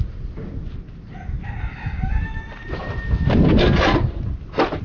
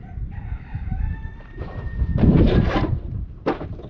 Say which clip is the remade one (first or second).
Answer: second